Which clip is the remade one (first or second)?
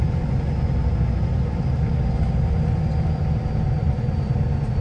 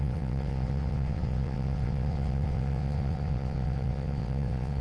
second